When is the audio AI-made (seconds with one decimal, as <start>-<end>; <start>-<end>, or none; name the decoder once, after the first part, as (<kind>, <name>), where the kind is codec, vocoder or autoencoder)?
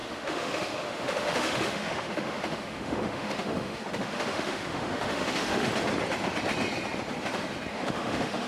0.0-5.7 (autoencoder, DAC-VAE); 7.7-8.5